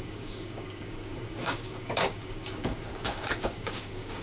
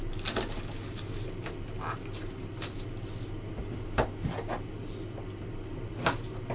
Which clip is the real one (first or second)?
second